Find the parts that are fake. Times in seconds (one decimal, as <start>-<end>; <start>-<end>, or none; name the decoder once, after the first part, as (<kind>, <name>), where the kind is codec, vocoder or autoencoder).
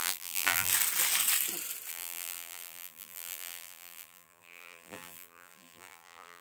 0.0-0.7 (vocoder, BigVGAN v2); 1.9-6.4